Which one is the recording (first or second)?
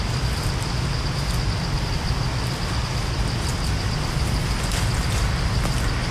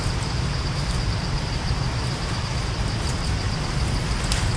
first